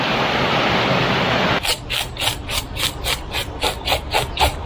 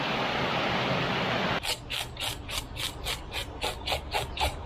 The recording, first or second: second